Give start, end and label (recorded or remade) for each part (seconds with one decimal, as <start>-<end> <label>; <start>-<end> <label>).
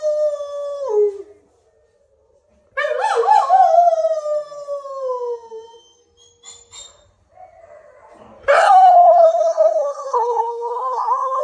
0.0-8.5 recorded; 8.5-11.4 remade